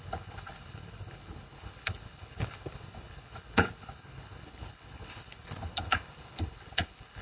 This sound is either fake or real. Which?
fake